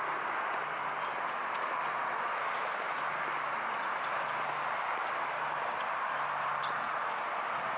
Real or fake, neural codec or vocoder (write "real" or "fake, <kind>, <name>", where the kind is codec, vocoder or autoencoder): real